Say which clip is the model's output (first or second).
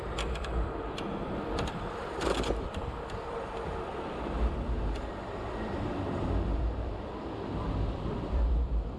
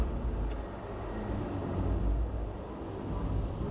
first